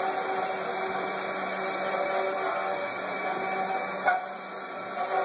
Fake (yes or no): no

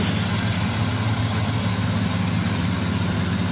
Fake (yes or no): no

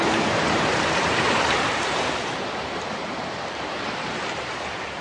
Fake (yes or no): yes